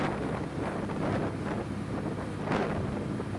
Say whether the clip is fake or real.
real